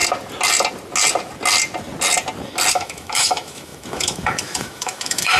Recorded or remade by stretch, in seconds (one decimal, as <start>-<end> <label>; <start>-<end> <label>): 0.0-2.7 recorded; 2.7-5.4 remade